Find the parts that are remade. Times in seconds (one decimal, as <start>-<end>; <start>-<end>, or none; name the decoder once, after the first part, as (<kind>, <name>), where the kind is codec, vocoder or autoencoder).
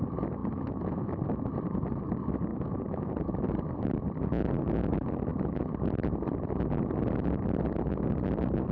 0.4-1.1 (autoencoder, DAC-VAE); 2.5-3.1